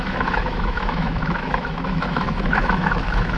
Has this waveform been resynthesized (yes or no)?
yes